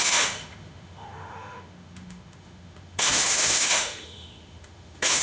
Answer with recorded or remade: remade